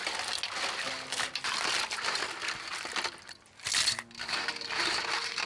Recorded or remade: recorded